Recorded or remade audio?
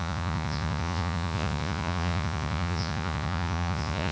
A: remade